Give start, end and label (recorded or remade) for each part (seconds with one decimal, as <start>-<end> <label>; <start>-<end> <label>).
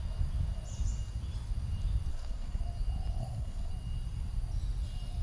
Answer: 0.0-2.1 recorded; 2.1-2.6 remade; 2.6-3.2 recorded; 3.2-3.7 remade; 3.7-5.2 recorded